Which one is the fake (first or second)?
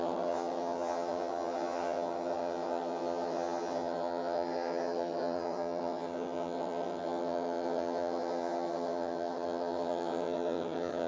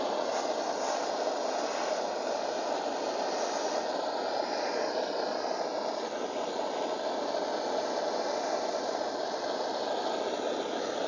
first